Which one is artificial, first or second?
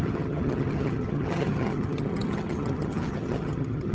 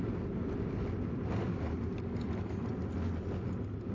first